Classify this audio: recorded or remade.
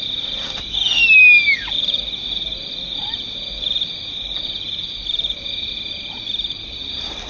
recorded